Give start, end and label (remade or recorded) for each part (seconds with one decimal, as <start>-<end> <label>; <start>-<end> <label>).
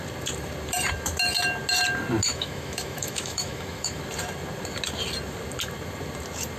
0.0-2.3 recorded; 2.3-4.0 remade; 4.0-6.6 recorded